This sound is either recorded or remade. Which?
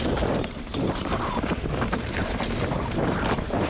remade